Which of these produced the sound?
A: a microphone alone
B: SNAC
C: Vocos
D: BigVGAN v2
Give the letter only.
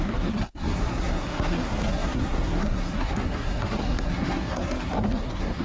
B